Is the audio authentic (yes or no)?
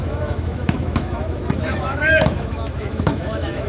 no